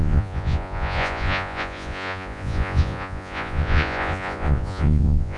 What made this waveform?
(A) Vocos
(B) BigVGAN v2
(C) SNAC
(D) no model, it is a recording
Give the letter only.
A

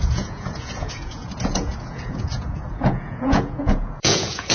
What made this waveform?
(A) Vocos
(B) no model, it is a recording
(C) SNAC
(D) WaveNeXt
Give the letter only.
A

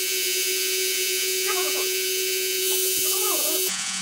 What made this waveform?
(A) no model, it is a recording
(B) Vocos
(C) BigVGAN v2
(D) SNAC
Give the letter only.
B